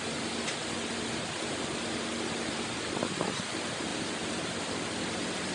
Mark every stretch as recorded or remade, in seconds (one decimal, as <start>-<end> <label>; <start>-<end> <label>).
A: 0.0-5.5 recorded